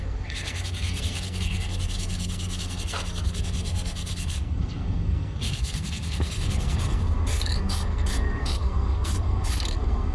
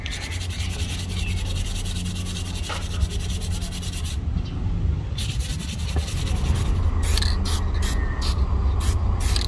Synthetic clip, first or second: first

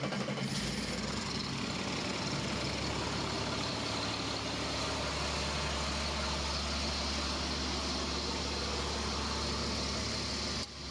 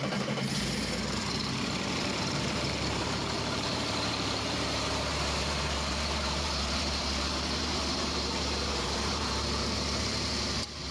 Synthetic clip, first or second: second